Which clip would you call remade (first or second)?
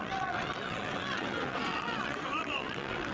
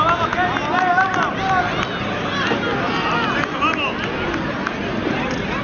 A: first